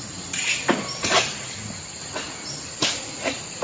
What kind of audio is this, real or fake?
real